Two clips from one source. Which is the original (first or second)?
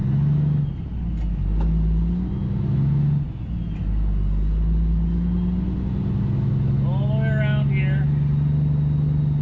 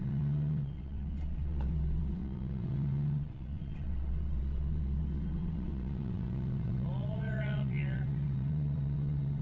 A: first